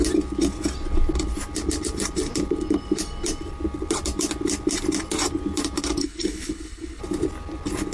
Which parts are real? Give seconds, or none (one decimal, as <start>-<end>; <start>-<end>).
0.0-6.0; 7.0-7.9